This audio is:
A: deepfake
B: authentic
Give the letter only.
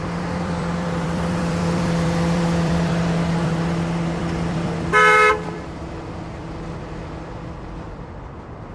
A